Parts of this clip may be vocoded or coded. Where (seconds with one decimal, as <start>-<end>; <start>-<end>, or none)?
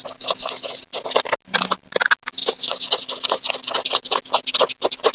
none